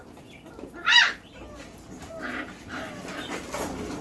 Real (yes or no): yes